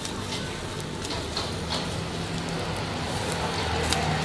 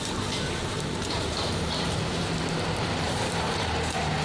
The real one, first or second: first